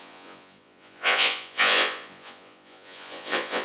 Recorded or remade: remade